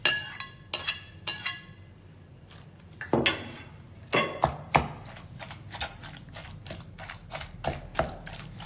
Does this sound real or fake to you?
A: real